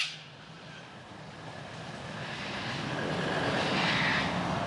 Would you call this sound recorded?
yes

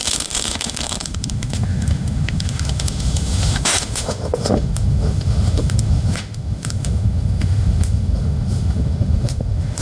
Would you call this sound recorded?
no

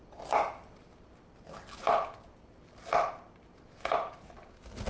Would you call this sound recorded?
yes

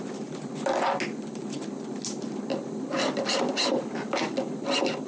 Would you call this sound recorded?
yes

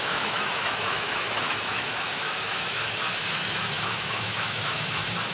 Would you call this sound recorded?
no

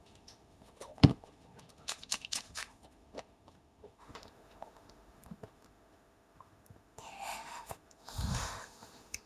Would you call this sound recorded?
no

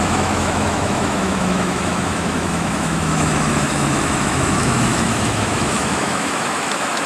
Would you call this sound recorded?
no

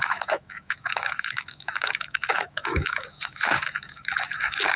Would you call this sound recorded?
no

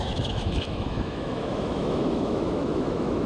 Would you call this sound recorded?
no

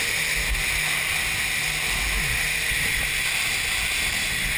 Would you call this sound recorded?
yes